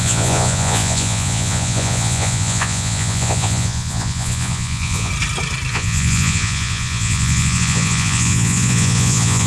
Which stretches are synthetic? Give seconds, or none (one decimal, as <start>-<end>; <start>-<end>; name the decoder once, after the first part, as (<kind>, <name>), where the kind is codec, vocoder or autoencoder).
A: 0.0-5.1 (vocoder, Vocos); 5.7-9.5